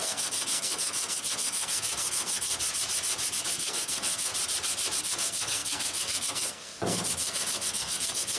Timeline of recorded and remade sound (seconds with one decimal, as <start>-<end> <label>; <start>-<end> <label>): 0.0-2.5 remade; 2.5-3.4 recorded; 3.4-4.3 remade; 4.3-5.0 recorded; 5.0-8.4 remade